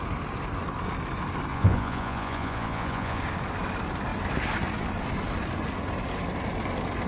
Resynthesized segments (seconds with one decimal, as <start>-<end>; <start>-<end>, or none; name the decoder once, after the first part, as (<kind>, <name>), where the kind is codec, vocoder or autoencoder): 1.5-3.2 (vocoder, Vocos)